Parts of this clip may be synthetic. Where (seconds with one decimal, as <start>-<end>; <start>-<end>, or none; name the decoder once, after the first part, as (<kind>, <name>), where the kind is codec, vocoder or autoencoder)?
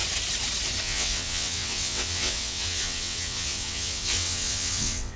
0.8-5.2 (vocoder, WaveNeXt)